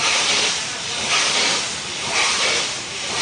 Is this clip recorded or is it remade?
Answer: remade